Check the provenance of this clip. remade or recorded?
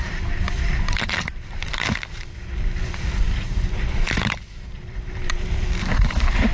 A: remade